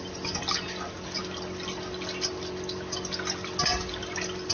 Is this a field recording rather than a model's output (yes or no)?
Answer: yes